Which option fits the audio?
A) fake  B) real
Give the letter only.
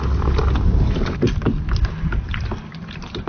B